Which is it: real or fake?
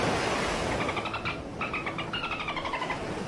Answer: real